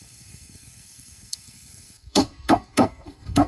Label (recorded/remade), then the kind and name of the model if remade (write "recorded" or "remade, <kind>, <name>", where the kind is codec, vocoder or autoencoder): remade, codec, SNAC